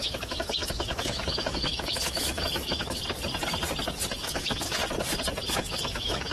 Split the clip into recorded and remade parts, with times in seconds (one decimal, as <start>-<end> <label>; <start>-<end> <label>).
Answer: 0.0-3.0 remade; 3.0-4.1 recorded; 4.1-4.8 remade; 4.8-5.5 recorded; 5.5-6.3 remade